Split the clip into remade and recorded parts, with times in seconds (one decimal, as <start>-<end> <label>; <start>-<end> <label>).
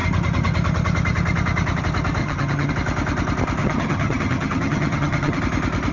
0.0-2.2 recorded; 2.2-2.7 remade; 2.7-3.6 recorded; 3.6-5.4 remade; 5.4-5.9 recorded